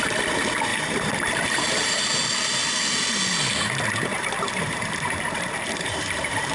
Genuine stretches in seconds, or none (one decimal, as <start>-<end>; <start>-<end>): 0.0-0.7; 1.9-4.1